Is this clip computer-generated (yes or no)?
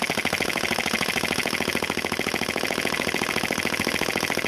no